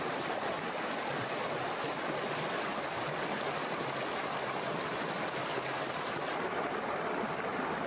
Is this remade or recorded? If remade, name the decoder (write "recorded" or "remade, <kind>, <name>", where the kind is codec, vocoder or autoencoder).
recorded